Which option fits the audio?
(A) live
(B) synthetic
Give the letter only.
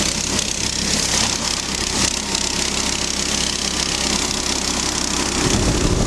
A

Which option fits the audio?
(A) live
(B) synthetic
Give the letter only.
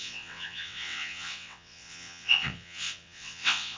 B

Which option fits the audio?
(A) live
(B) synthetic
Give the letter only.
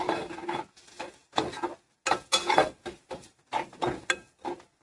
A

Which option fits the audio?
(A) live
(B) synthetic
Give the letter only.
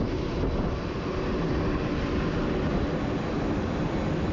A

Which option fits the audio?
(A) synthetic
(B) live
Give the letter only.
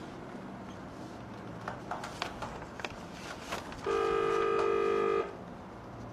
B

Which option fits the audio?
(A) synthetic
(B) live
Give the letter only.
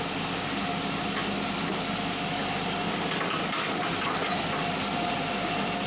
B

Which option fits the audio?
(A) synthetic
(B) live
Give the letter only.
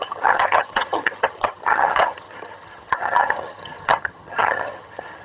A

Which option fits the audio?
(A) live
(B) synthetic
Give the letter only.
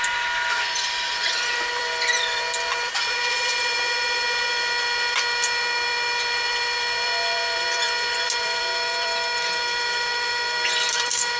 B